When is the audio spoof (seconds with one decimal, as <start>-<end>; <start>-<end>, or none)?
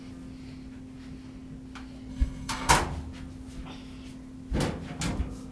2.1-2.7